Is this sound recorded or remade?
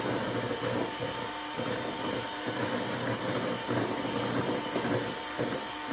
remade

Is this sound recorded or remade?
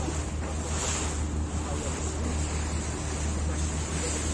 recorded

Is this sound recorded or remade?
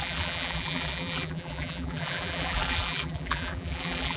remade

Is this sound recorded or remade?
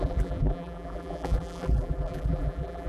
remade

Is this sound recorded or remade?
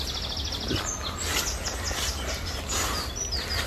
recorded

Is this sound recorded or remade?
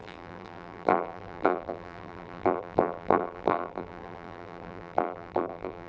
remade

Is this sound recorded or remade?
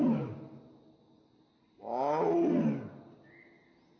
recorded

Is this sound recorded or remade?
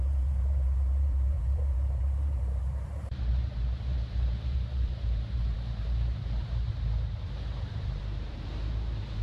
remade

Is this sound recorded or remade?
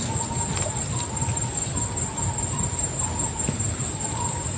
recorded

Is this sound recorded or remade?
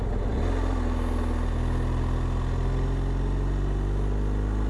recorded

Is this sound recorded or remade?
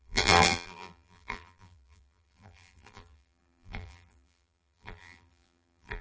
remade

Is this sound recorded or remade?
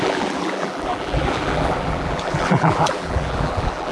remade